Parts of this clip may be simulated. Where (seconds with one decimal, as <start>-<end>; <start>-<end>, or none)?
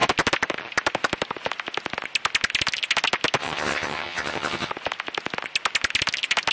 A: 3.4-4.7